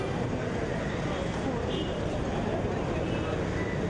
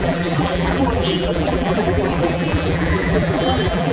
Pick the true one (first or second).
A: first